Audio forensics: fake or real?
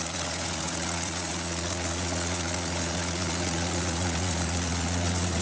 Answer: fake